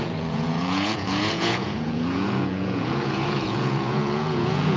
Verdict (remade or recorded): remade